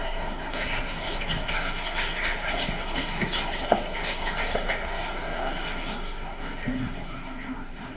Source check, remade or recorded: remade